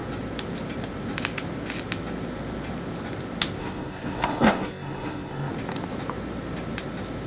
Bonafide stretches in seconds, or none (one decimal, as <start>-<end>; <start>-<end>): 0.0-3.6; 5.5-7.3